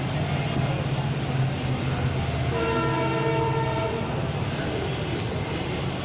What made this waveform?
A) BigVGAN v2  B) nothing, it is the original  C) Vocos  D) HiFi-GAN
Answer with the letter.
B